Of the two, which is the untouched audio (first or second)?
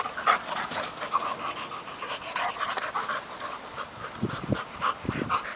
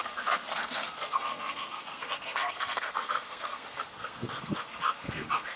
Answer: first